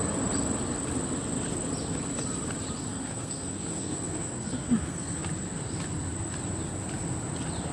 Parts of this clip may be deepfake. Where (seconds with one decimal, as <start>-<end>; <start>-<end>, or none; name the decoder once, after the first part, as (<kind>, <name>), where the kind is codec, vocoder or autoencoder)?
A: 2.9-5.2 (codec, SNAC)

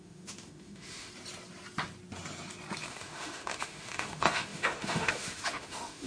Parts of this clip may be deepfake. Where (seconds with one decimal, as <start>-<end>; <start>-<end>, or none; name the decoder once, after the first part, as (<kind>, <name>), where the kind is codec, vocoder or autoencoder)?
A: 0.0-1.1 (autoencoder, DAC-VAE); 2.9-6.1